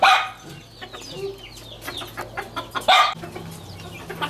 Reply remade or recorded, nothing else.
recorded